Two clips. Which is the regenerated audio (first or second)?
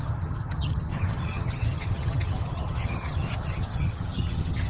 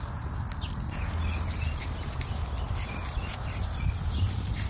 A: first